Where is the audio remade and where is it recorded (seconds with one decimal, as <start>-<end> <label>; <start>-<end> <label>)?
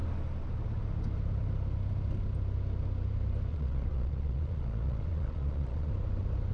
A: 0.0-3.5 recorded; 3.5-5.9 remade; 5.9-6.5 recorded